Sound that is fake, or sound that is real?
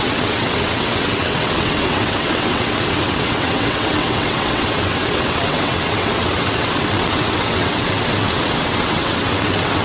fake